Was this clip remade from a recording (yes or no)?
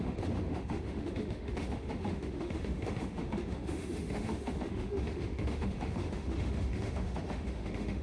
yes